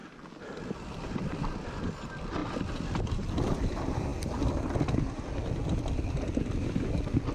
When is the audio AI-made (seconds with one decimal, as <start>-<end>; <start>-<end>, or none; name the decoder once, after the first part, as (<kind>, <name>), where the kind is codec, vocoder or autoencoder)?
none